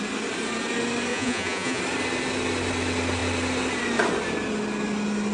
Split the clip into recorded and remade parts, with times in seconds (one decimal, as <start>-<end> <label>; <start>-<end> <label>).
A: 0.0-1.1 recorded; 1.1-1.8 remade; 1.8-5.3 recorded